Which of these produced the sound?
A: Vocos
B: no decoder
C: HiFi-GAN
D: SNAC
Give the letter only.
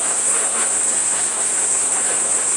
D